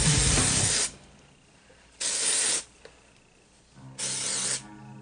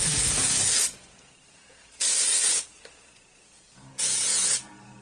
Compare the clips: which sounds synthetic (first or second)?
second